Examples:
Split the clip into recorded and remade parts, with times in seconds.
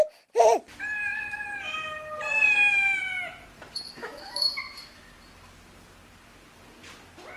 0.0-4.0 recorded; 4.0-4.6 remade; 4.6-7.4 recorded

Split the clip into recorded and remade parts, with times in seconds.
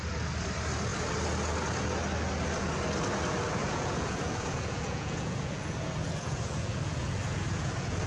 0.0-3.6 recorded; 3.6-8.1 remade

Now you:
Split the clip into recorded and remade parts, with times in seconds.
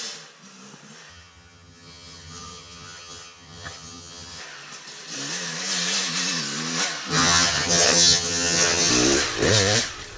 0.0-1.1 recorded; 1.1-4.4 remade; 4.4-7.1 recorded; 7.1-8.9 remade; 8.9-10.2 recorded